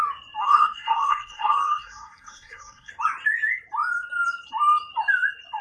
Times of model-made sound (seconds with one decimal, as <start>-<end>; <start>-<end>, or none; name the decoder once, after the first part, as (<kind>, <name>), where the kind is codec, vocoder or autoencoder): 0.4-2.9 (codec, SNAC)